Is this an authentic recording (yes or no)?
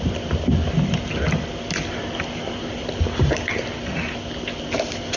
yes